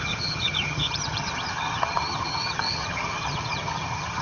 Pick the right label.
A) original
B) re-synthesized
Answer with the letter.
B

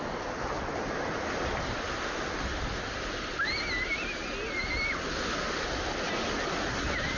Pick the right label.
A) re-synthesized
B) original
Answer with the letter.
B